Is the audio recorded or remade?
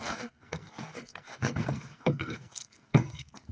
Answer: remade